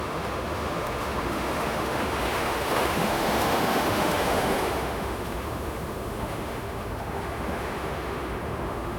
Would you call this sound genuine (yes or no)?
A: no